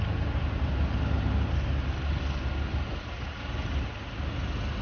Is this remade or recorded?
recorded